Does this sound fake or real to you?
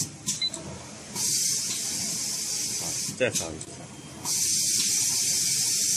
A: real